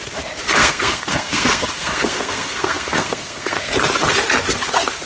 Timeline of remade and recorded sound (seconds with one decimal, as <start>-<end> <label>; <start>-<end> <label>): 0.0-0.6 recorded; 0.6-3.7 remade; 3.7-5.1 recorded